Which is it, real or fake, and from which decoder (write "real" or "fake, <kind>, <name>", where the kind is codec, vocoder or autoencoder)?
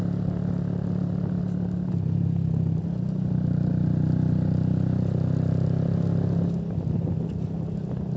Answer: real